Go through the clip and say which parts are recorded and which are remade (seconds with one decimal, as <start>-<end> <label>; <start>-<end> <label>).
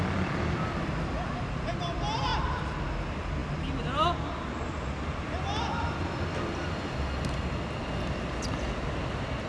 0.0-9.5 recorded